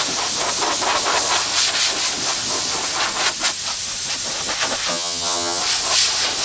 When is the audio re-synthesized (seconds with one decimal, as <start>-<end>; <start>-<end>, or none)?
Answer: 4.9-5.6